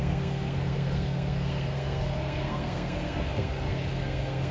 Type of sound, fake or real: fake